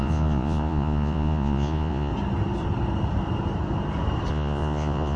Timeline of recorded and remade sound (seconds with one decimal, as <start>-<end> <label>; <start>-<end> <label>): 0.0-2.1 remade; 2.1-4.3 recorded; 4.3-5.2 remade